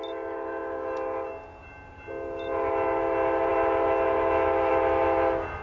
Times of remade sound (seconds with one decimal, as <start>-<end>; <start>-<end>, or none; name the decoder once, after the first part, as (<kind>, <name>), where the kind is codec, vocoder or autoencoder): none